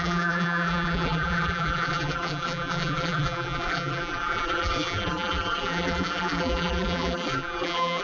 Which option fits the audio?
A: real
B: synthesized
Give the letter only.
B